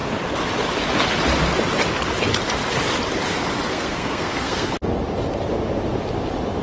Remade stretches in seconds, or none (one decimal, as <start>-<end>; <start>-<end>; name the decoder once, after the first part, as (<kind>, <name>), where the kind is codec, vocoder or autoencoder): 3.7-4.7 (codec, SNAC)

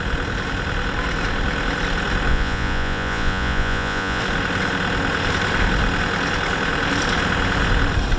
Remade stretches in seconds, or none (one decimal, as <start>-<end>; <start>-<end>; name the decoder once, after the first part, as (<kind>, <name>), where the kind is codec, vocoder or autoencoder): 2.3-4.2 (vocoder, Vocos)